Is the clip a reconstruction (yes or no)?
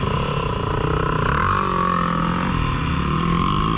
no